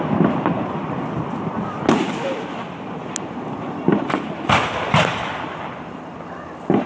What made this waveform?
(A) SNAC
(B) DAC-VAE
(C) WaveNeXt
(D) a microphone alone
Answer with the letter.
D